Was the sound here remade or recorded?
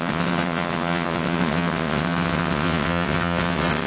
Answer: remade